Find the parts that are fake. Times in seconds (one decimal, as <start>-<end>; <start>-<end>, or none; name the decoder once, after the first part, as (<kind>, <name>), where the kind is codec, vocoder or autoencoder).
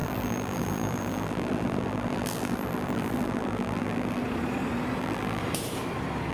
0.0-4.2 (vocoder, BigVGAN v2); 5.0-5.4